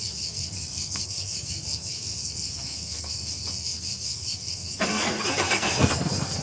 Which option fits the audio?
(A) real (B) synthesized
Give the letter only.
B